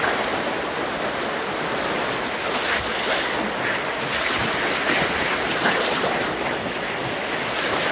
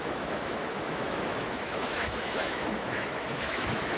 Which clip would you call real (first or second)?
first